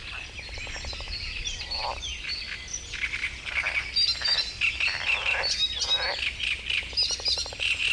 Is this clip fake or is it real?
real